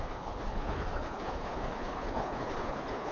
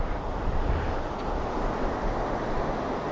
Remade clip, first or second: first